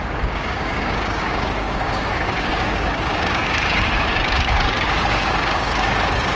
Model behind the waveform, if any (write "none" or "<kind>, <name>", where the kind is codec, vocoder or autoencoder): codec, DAC